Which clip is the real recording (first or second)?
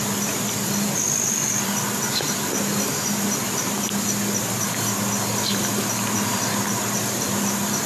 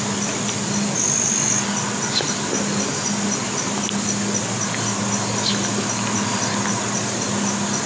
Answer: second